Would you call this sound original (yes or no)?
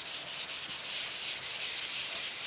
yes